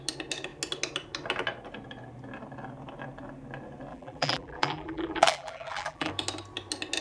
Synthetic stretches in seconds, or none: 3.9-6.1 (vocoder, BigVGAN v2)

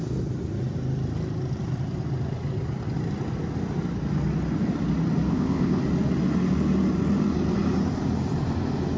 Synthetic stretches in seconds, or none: 5.3-5.8 (codec, ZipCodec)

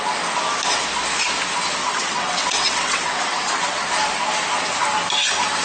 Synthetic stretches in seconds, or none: 1.8-3.5 (vocoder, WaveNeXt)

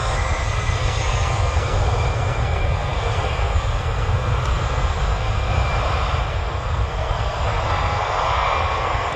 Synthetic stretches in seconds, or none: 0.0-5.6 (codec, SNAC); 6.3-9.2